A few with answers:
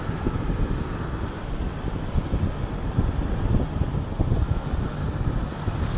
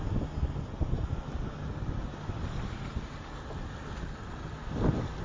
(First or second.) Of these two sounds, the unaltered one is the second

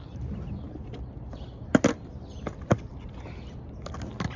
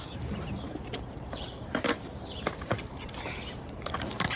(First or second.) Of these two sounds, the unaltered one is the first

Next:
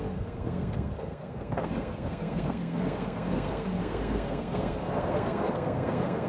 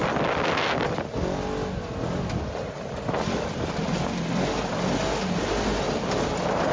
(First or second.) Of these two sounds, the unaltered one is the second